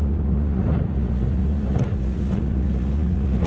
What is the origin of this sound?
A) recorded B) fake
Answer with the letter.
B